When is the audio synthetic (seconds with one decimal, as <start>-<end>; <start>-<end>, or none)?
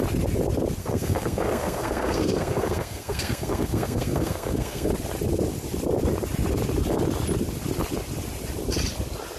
0.8-4.9